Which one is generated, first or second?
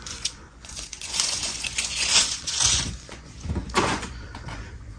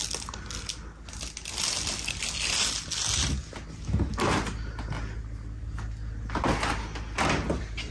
first